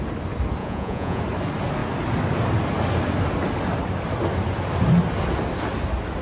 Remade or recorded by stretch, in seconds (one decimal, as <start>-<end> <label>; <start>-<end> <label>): 0.0-0.6 recorded; 0.6-1.2 remade; 1.2-6.2 recorded